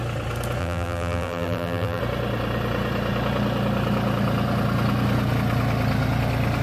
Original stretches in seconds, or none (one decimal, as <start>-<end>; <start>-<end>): 0.0-0.6; 2.0-6.6